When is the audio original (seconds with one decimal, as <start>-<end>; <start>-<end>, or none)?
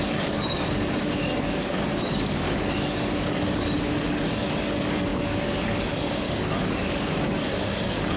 none